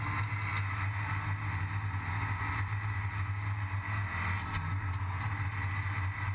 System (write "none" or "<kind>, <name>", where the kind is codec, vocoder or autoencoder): none